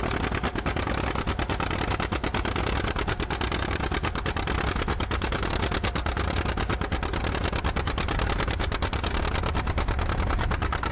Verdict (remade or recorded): recorded